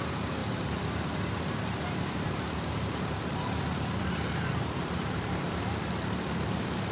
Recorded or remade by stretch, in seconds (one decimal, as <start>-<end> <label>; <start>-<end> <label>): 0.0-6.9 remade